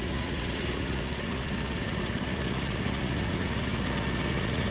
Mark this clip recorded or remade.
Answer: remade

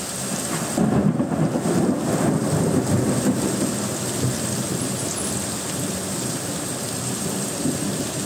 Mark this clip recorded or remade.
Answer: recorded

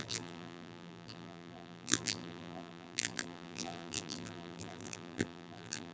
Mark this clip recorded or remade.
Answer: remade